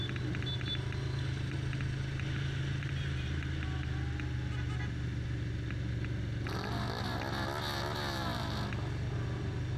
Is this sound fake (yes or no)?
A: no